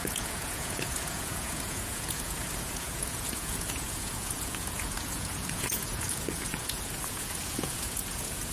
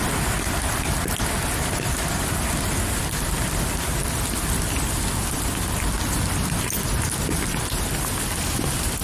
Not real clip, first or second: first